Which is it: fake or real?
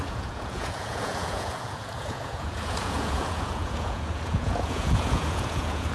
fake